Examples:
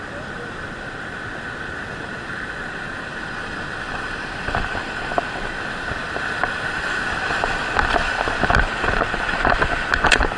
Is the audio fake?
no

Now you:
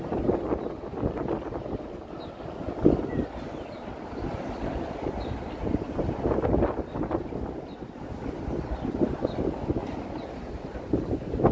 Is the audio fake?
no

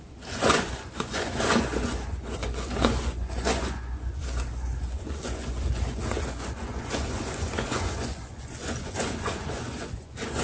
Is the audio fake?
yes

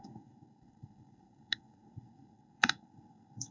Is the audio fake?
yes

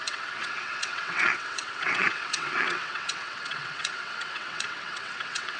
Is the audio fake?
yes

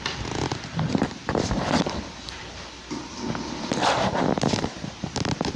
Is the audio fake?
yes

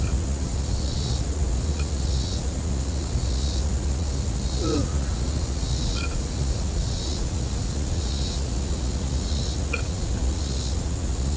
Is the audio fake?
yes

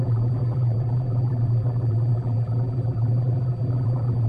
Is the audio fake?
yes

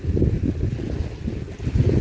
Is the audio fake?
no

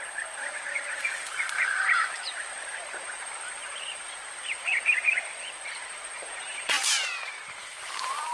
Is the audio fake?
yes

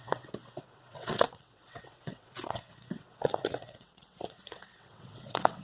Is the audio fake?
yes